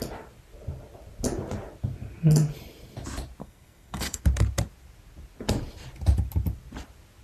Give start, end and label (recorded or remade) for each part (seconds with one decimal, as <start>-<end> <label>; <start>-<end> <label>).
0.0-3.4 recorded; 3.4-4.2 remade; 4.2-7.2 recorded